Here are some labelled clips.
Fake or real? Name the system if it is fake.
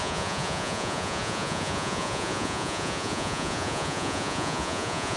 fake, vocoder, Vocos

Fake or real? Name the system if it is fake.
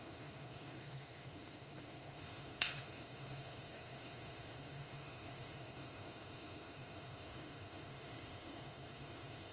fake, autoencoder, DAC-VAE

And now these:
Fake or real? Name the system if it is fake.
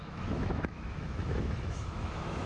fake, autoencoder, DAC-VAE